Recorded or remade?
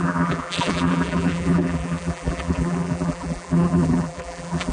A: remade